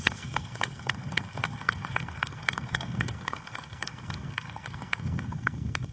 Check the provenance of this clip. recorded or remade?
remade